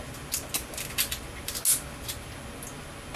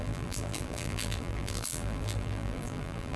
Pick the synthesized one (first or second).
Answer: second